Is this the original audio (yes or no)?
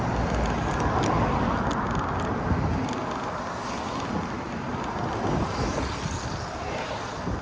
yes